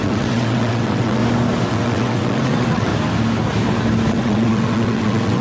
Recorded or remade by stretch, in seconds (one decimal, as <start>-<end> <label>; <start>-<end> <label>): 0.0-1.2 remade; 1.2-1.7 recorded; 1.7-2.9 remade; 2.9-4.1 recorded; 4.1-5.4 remade